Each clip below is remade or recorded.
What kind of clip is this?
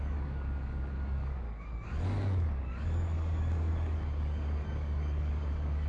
remade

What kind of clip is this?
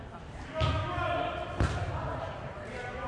recorded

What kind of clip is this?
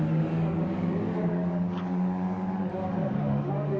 remade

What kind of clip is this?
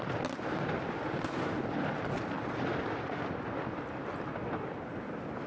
recorded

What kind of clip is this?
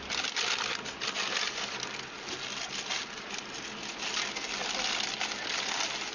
recorded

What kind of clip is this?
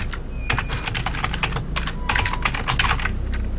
recorded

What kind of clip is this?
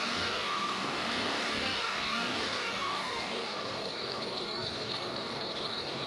remade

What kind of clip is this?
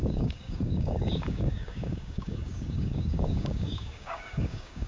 remade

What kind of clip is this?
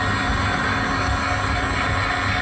recorded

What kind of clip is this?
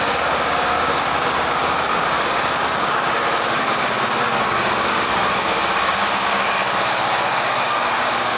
remade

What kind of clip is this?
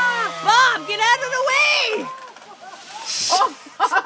recorded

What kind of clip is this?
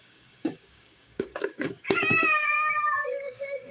remade